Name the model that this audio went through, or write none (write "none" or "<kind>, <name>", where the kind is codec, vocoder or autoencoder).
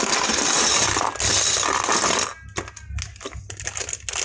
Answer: none